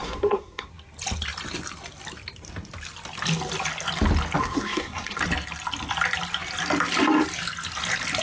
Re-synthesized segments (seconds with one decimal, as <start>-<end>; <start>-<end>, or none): 0.0-0.7; 4.4-5.2